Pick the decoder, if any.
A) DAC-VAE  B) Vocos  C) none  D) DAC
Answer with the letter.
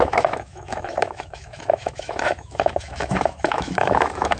A